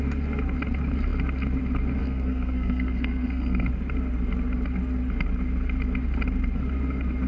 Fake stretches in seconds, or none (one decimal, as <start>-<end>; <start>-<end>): 2.0-3.7